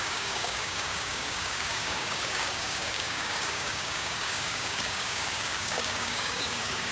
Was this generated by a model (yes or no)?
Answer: yes